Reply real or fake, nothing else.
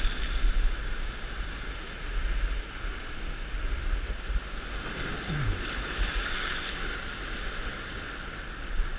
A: real